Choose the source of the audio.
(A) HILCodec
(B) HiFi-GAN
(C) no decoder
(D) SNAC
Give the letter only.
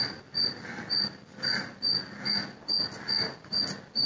C